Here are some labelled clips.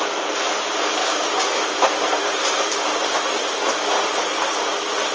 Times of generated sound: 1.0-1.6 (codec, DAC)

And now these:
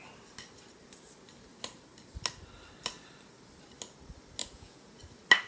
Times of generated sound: 4.4-5.0 (vocoder, Vocos)

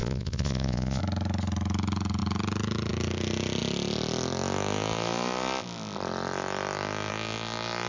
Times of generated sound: 0.0-1.0 (vocoder, Vocos)

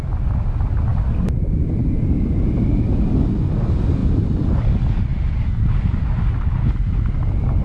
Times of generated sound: none